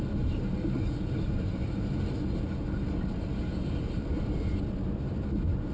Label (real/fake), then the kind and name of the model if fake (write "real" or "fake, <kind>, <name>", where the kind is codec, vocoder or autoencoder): real